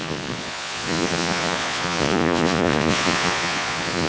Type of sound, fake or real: fake